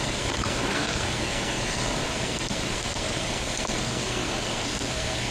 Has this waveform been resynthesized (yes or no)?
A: yes